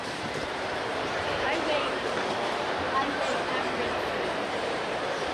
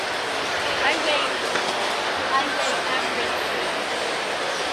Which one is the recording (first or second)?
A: second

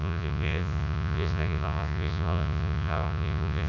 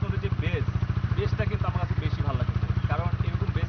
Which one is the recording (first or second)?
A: second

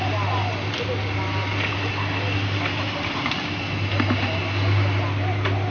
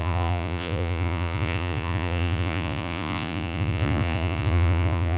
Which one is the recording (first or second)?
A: first